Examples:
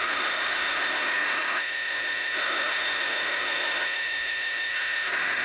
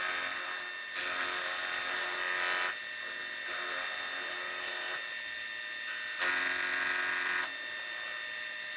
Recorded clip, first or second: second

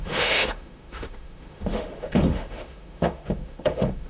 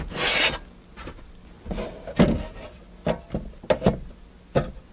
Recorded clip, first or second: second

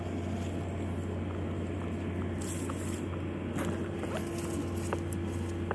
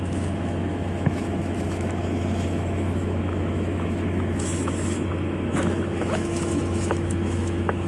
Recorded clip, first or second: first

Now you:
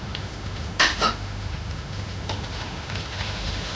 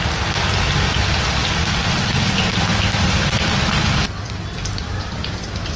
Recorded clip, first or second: second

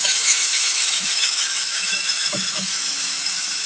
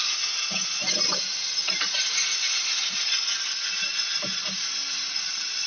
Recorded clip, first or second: second